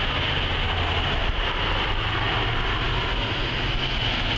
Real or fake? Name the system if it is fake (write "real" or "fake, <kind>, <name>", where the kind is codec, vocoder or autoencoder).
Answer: real